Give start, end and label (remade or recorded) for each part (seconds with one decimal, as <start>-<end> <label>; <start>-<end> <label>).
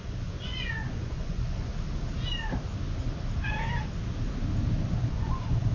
0.0-1.7 remade; 1.7-5.1 recorded; 5.1-5.7 remade